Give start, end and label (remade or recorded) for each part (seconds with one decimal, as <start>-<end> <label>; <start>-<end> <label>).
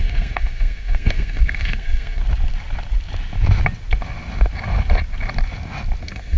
0.0-2.2 remade; 2.2-6.0 recorded; 6.0-6.4 remade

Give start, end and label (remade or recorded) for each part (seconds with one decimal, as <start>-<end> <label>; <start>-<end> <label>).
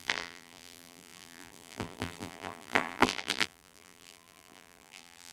0.0-5.3 remade